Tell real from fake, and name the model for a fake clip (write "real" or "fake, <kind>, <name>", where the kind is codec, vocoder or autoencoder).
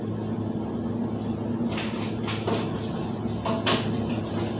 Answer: real